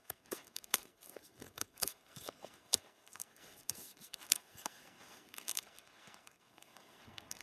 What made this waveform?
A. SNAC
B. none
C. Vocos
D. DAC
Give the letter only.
A